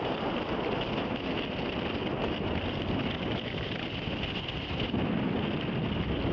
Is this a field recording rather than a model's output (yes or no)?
yes